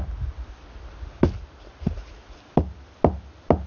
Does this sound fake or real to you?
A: real